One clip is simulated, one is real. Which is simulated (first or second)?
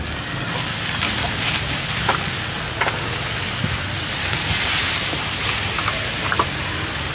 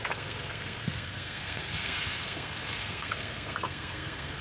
second